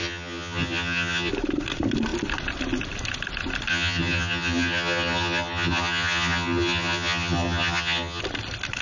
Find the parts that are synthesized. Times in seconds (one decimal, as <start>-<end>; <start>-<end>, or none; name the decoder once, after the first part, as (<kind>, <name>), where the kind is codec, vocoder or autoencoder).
0.0-1.3 (vocoder, HiFi-GAN); 3.7-8.2